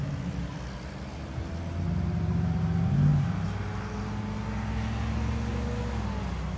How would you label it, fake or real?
real